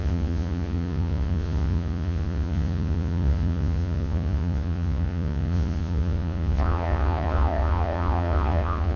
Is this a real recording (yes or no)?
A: no